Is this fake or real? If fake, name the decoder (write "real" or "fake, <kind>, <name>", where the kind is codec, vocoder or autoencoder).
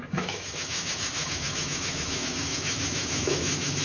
fake, autoencoder, DAC-VAE